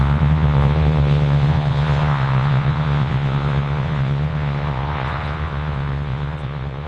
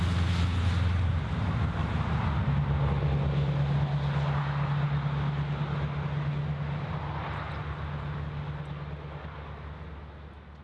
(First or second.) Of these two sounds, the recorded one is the second